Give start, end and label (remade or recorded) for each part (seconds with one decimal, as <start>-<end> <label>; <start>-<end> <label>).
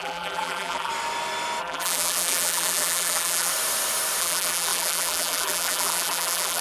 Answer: 0.0-0.9 remade; 0.9-1.6 recorded; 1.6-3.5 remade; 3.5-4.2 recorded; 4.2-6.6 remade